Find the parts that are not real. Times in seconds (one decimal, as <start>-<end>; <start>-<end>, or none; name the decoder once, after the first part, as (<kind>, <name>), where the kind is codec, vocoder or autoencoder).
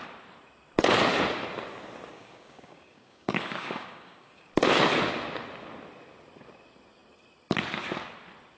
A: 2.1-4.5 (codec, DAC)